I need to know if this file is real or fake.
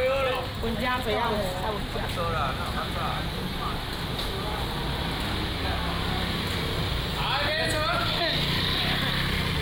real